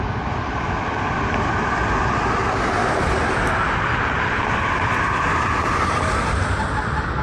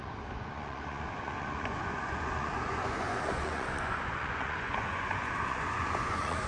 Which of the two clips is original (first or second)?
first